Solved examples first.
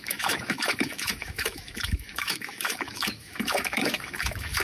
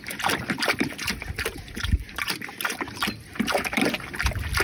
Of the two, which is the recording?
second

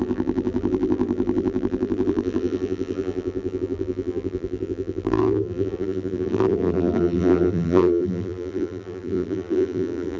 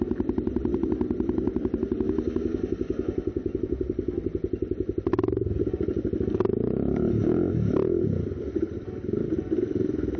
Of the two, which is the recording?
second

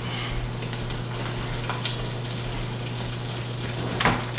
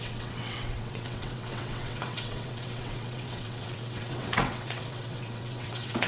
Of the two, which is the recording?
first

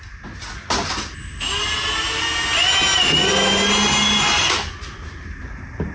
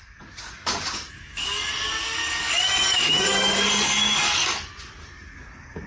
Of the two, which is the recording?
first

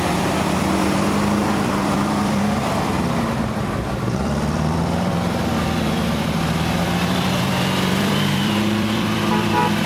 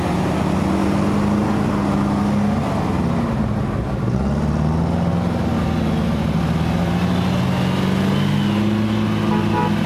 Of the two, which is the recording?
second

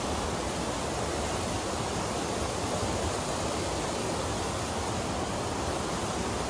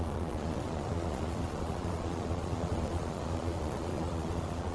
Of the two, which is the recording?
first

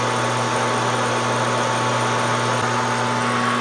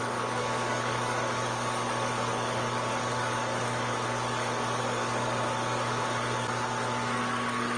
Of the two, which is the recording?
first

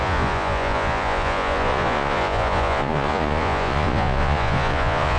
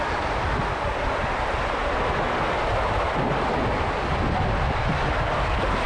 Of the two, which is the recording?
second